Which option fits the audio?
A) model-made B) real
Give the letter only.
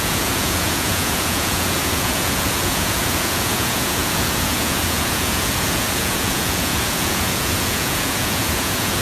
A